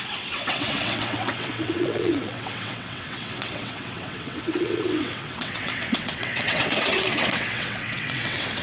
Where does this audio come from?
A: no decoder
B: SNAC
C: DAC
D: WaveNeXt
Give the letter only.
D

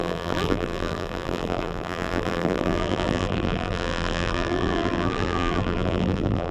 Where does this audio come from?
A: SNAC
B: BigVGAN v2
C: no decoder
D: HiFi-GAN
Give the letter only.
B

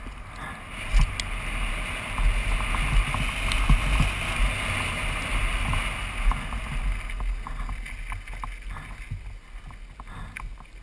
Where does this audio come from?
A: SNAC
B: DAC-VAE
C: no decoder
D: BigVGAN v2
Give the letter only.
C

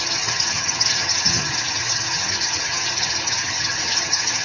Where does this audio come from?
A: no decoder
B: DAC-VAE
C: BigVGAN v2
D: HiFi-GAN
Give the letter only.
D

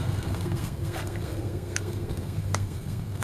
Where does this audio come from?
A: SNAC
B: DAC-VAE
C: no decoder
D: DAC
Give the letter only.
A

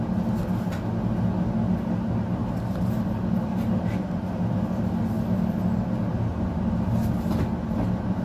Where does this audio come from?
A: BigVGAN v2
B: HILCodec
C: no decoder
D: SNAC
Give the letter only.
C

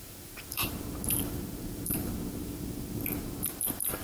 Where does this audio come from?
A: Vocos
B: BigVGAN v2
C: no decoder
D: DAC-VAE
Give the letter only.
B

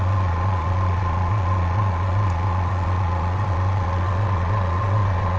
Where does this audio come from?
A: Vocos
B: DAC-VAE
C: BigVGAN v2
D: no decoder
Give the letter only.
A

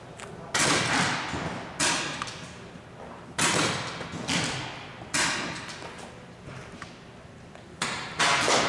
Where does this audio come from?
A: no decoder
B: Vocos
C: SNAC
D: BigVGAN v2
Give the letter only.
A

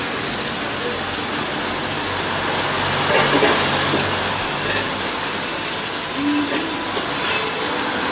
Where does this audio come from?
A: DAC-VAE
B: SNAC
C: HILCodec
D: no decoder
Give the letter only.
D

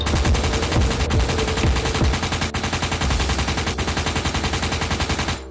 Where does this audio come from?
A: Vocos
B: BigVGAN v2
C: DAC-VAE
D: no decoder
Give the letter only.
D